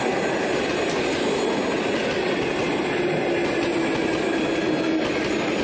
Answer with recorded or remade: recorded